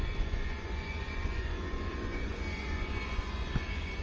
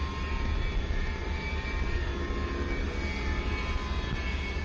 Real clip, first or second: second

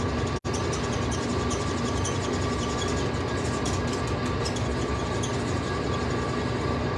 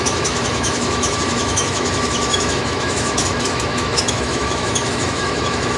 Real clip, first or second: first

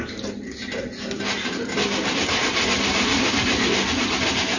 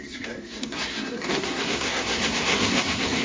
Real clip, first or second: first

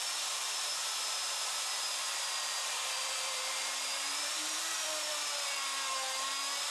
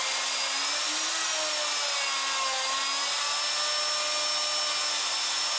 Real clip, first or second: second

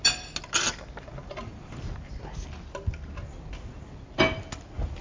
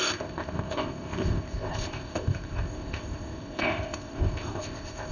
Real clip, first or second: first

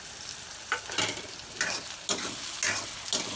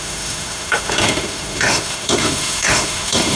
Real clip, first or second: first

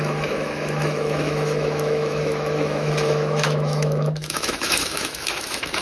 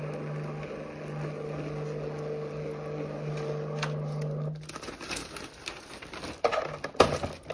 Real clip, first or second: second